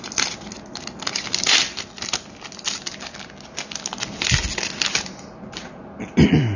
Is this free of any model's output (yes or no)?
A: yes